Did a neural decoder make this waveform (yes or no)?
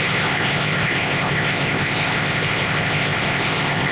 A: yes